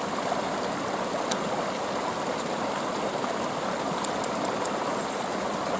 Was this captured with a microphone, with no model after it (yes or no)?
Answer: yes